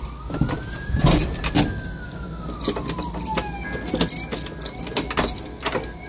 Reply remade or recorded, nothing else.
recorded